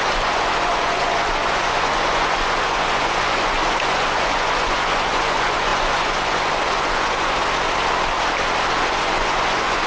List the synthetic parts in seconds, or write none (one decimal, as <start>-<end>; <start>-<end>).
0.0-7.4; 8.9-9.9